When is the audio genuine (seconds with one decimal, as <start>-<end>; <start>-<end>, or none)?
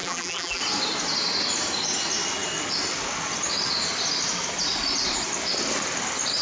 0.6-6.4